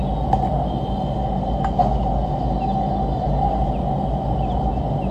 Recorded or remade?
recorded